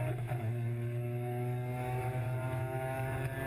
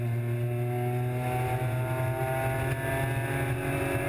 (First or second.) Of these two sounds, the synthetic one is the first